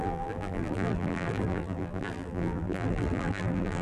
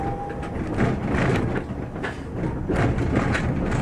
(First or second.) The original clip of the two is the second